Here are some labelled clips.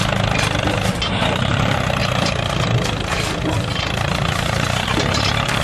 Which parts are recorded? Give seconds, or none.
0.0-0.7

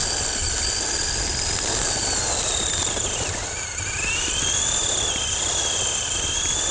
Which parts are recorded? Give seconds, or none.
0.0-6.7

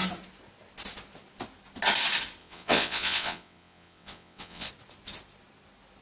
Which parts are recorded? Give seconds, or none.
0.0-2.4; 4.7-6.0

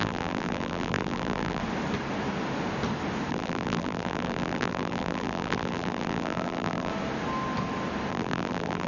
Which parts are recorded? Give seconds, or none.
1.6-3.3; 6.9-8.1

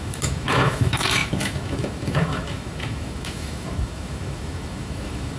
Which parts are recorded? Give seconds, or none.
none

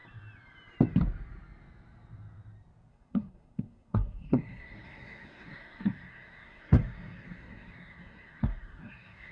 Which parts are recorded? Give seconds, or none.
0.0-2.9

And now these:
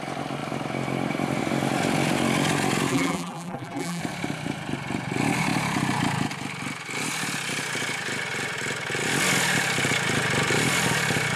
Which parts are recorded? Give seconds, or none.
0.0-2.9; 4.0-11.4